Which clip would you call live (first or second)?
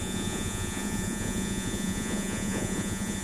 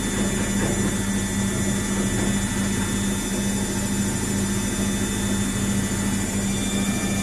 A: second